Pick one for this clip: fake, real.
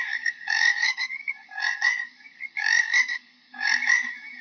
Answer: fake